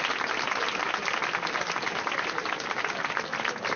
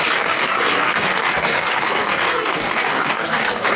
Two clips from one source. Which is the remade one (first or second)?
second